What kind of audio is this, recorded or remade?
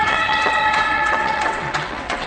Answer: remade